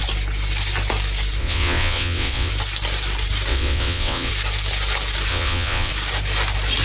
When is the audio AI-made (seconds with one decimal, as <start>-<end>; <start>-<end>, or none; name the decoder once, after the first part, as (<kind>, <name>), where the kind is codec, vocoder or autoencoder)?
1.4-2.5 (vocoder, WaveNeXt); 3.5-4.3; 5.3-5.9